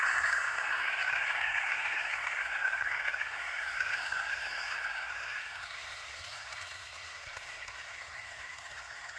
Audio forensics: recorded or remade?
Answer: remade